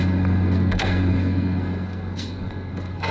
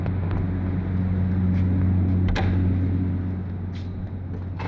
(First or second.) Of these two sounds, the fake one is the first